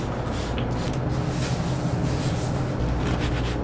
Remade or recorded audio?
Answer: recorded